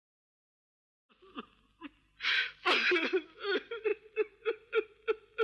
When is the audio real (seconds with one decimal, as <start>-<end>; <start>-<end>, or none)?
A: 0.0-3.9; 4.7-5.4